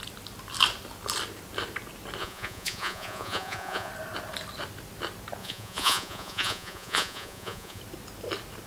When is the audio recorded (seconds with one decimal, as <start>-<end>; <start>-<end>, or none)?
0.0-2.2; 3.9-5.4; 7.8-8.7